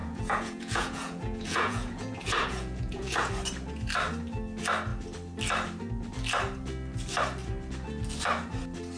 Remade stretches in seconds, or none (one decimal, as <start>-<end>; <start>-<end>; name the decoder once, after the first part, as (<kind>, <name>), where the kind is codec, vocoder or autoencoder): 0.0-3.3 (vocoder, Vocos)